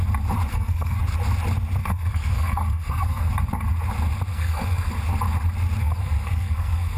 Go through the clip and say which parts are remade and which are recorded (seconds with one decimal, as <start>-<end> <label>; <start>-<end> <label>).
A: 0.0-0.5 recorded; 0.5-1.0 remade; 1.0-1.8 recorded; 1.8-3.3 remade; 3.3-4.3 recorded; 4.3-4.9 remade; 4.9-5.8 recorded; 5.8-7.0 remade